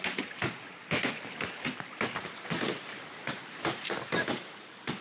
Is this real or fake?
real